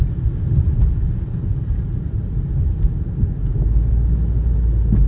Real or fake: real